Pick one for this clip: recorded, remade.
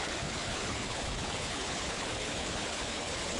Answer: remade